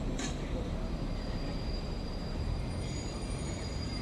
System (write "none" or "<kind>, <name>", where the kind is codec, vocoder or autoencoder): vocoder, BigVGAN v2